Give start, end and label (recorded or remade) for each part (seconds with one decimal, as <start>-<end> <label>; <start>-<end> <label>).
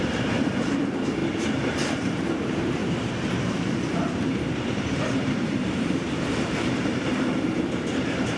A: 0.0-1.2 remade; 1.2-2.1 recorded; 2.1-8.4 remade